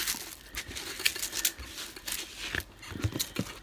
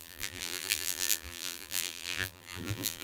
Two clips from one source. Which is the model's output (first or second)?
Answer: second